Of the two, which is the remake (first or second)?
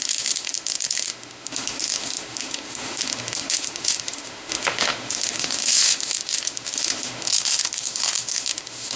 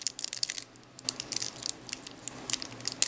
first